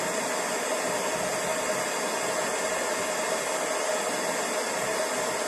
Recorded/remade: recorded